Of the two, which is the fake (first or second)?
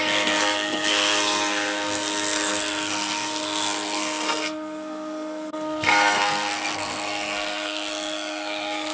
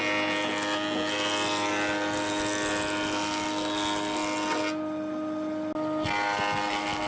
first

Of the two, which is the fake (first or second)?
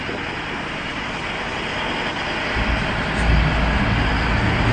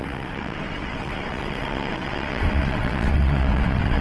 second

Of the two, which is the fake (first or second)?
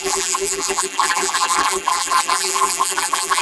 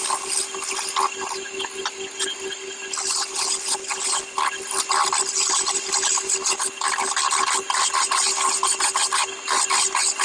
first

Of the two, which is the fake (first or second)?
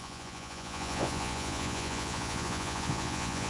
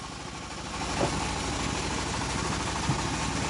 first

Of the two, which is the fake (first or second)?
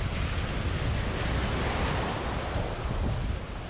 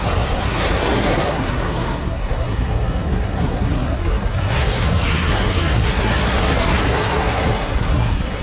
second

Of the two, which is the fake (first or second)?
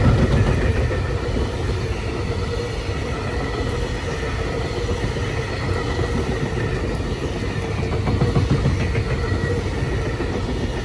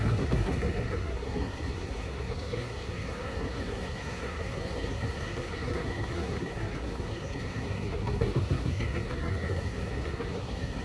second